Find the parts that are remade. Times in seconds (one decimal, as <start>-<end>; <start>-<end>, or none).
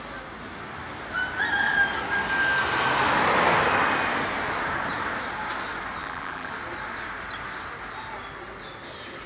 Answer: 6.0-6.5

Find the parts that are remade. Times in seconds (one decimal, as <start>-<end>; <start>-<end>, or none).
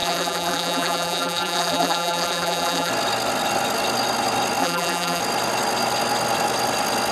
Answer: 0.0-2.9; 4.6-5.2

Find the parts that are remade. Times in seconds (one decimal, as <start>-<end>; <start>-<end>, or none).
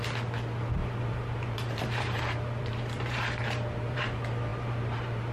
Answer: 0.8-4.0; 4.5-5.3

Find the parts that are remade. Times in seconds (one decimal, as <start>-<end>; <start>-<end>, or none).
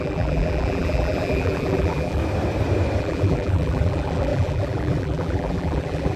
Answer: 0.0-2.2; 3.0-6.2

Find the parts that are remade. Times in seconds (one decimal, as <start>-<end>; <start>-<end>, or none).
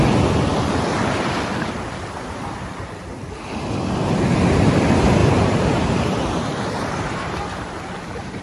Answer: 5.2-8.4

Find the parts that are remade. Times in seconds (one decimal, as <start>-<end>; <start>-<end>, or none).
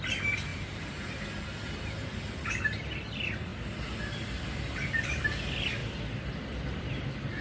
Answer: 0.5-1.5; 5.8-7.4